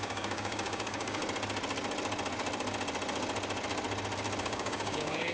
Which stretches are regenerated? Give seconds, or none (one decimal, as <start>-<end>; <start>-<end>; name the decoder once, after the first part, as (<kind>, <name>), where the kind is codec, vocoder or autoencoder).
0.0-1.2 (codec, DAC); 4.4-5.3